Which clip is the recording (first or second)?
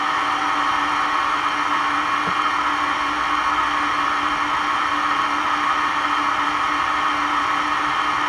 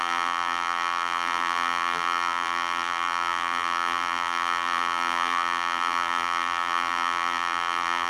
first